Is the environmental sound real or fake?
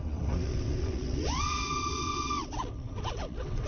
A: fake